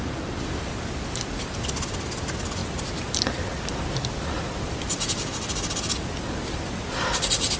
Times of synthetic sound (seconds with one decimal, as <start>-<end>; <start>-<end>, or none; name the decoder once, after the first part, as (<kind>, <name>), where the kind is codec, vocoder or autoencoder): none

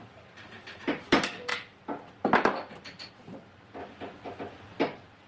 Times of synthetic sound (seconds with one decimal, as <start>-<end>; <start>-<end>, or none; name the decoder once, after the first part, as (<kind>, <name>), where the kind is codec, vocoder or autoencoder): none

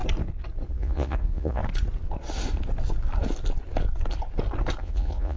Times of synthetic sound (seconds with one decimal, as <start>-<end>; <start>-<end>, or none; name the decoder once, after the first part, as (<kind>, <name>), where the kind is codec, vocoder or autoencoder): 0.7-1.6 (vocoder, Vocos); 4.8-5.4

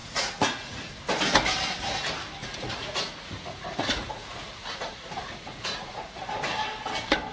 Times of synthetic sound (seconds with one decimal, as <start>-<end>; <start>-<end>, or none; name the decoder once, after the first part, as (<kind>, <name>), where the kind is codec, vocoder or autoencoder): 0.0-0.9 (vocoder, Vocos); 2.4-6.2

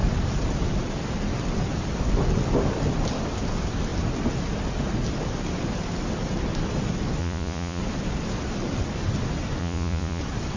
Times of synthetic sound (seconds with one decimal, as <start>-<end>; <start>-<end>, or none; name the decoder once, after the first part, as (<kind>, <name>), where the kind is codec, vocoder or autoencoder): 7.2-7.8 (vocoder, Vocos); 9.6-10.2

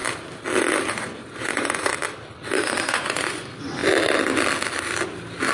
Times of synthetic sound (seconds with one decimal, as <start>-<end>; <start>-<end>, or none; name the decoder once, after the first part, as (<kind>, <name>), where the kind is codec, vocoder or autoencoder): 0.9-1.9 (vocoder, Vocos); 2.6-3.8

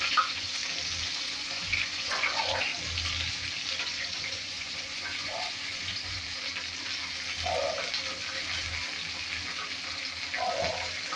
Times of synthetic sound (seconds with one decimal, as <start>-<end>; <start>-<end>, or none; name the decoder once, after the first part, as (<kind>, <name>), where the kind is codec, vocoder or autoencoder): 0.0-0.6 (vocoder, Vocos); 1.2-2.7; 3.8-6.2

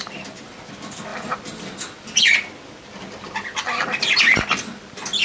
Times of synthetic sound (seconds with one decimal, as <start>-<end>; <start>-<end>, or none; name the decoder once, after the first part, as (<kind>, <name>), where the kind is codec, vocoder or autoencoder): none